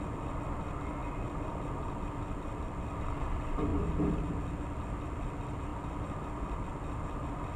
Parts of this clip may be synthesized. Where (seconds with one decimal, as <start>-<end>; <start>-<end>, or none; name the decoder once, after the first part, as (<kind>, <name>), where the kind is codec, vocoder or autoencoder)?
none